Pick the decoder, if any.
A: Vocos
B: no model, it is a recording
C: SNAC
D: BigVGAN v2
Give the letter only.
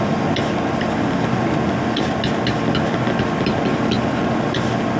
B